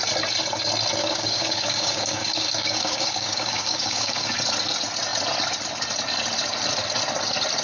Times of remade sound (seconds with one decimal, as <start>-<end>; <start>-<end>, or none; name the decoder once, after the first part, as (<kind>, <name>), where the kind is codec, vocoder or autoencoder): 1.0-4.3 (codec, DAC)